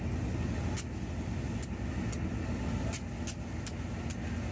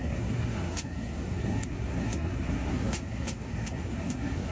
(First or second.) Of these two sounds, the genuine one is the first